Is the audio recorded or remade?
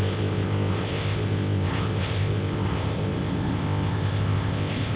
remade